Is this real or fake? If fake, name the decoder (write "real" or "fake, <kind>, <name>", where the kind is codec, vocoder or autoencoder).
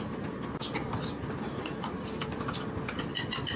real